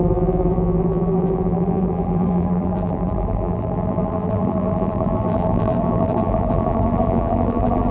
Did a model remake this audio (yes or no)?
yes